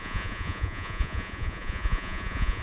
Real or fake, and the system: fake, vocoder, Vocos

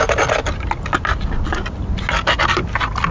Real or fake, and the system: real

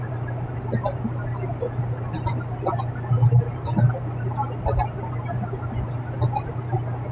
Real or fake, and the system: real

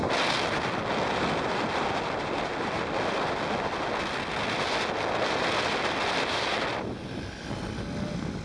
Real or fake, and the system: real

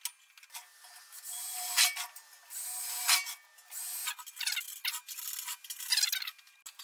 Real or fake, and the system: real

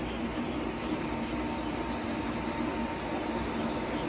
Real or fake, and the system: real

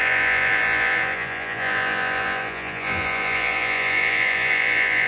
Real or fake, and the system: fake, vocoder, Vocos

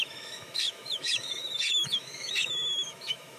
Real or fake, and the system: fake, autoencoder, DAC-VAE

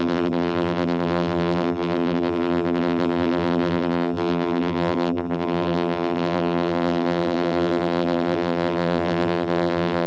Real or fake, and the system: fake, vocoder, BigVGAN v2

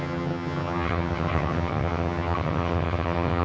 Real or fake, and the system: fake, vocoder, HiFi-GAN